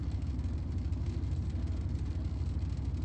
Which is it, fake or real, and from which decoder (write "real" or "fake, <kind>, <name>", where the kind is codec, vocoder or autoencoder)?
real